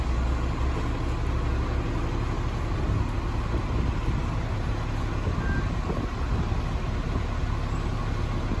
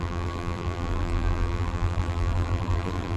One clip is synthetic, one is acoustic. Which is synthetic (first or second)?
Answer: second